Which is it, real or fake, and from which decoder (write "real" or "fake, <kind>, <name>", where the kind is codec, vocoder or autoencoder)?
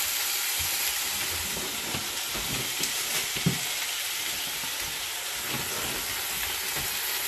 real